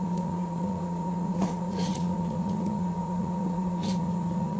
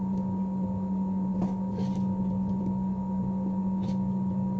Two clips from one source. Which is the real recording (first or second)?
second